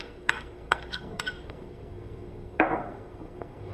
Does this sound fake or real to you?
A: fake